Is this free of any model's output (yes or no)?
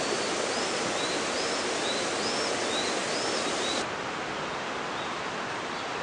yes